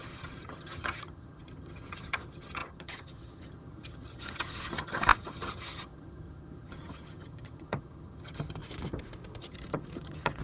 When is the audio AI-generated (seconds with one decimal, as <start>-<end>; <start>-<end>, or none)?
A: 0.0-8.6; 9.4-10.4